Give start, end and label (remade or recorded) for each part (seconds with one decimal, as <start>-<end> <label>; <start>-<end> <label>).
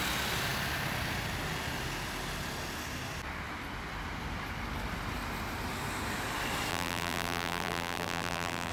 0.0-6.7 recorded; 6.7-8.7 remade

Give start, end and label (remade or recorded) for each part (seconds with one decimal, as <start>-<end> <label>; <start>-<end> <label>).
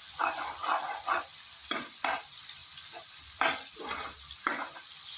0.0-0.6 recorded; 0.6-1.5 remade; 1.5-5.2 recorded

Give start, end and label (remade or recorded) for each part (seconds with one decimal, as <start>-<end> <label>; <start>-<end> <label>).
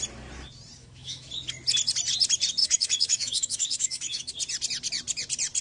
0.0-0.8 recorded; 0.8-1.3 remade; 1.3-2.6 recorded; 2.6-4.3 remade; 4.3-5.6 recorded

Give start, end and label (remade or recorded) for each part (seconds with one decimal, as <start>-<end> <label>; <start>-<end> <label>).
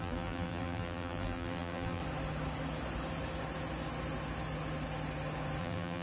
0.0-2.0 remade; 2.0-5.6 recorded; 5.6-6.0 remade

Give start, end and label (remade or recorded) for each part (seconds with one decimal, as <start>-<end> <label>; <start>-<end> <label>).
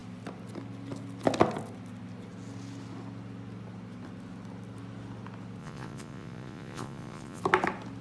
0.0-5.6 recorded; 5.6-7.4 remade; 7.4-8.0 recorded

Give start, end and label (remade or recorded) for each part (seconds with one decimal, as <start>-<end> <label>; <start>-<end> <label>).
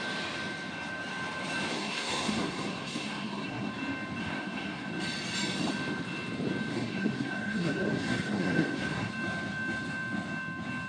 0.0-1.7 recorded; 1.7-3.7 remade; 3.7-4.2 recorded; 4.2-4.9 remade; 4.9-6.7 recorded; 6.7-9.1 remade; 9.1-10.9 recorded